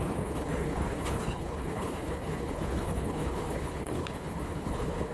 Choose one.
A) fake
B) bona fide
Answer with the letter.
A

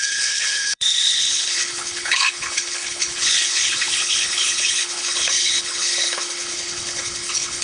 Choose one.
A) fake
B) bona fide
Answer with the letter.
A